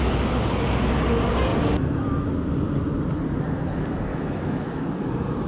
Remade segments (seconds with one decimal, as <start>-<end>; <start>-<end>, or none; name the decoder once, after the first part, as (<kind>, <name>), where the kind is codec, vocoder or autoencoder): 4.1-4.8 (autoencoder, DAC-VAE)